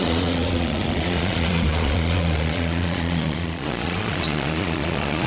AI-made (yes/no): yes